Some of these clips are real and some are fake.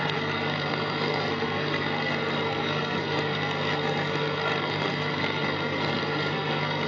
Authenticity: fake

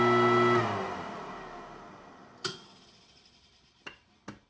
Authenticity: real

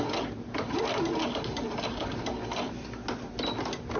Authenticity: real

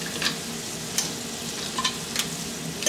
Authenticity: real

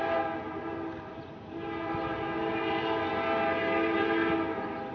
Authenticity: real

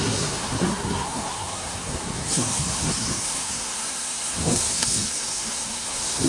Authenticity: fake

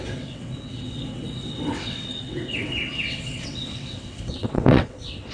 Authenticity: fake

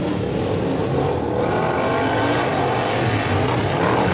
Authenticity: real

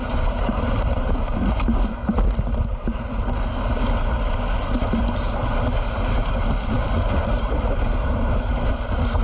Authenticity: real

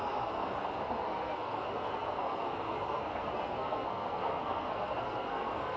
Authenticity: fake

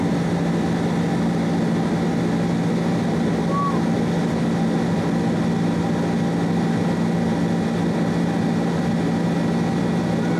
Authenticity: real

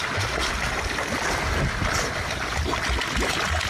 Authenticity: real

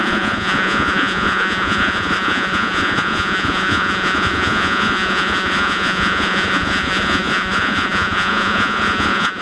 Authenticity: fake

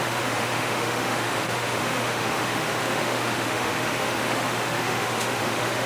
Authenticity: fake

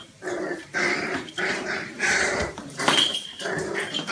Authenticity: fake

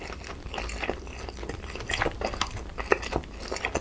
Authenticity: real